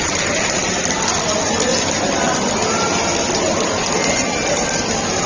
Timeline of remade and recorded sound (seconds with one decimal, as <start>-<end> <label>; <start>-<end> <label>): 0.0-5.3 recorded